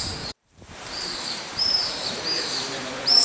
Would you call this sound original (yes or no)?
no